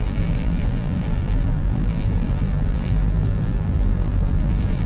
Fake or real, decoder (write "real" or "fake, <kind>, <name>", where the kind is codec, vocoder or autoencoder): fake, vocoder, BigVGAN v2